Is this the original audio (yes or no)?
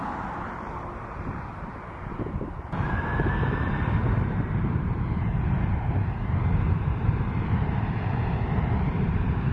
no